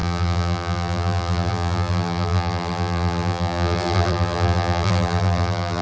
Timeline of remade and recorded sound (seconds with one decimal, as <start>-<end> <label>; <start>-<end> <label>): 0.0-5.8 remade